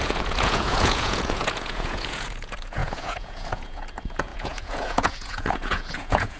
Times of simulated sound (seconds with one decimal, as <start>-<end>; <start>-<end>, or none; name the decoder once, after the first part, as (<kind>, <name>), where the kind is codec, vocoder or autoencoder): 0.0-6.4 (vocoder, Vocos)